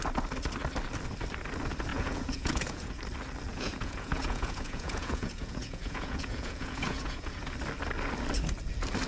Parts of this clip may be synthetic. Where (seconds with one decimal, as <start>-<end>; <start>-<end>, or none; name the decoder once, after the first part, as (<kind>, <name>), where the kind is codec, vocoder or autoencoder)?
1.9-3.0 (vocoder, Vocos); 3.5-7.5